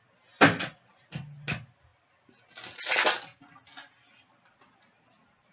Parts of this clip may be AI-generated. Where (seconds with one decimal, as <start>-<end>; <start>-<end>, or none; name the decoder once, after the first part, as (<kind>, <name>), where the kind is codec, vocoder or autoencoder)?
none

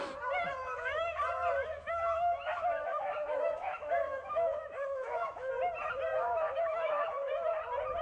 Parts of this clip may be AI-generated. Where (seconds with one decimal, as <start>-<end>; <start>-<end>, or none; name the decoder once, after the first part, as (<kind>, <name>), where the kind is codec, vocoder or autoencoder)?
0.6-1.2 (autoencoder, DAC-VAE); 1.6-5.5; 6.1-7.3

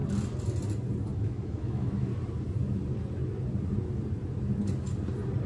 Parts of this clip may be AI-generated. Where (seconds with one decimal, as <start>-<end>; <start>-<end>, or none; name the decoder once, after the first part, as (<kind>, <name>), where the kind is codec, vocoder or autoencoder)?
1.1-2.1 (autoencoder, DAC-VAE)

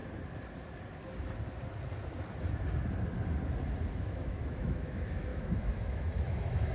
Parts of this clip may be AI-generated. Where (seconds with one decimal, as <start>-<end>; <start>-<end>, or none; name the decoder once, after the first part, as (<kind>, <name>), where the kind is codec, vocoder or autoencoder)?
3.9-6.7 (autoencoder, DAC-VAE)

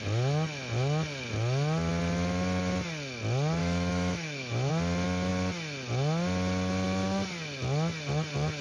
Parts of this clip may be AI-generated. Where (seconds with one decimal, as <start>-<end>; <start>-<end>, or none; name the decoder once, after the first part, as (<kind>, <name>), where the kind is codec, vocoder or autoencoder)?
3.6-4.7 (autoencoder, DAC-VAE)

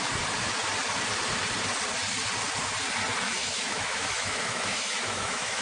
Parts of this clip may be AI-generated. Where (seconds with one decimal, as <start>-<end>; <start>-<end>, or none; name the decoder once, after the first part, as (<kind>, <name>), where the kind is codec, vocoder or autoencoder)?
3.4-5.6 (autoencoder, DAC-VAE)

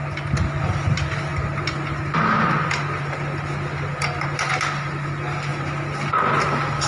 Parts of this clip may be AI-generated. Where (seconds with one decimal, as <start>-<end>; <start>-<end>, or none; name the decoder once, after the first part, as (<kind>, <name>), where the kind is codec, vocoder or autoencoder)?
none

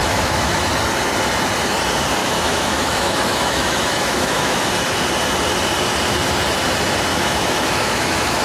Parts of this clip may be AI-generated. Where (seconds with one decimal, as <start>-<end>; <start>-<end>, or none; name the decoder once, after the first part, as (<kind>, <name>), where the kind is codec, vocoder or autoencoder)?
0.0-0.7 (autoencoder, DAC-VAE); 2.2-4.7; 7.1-8.4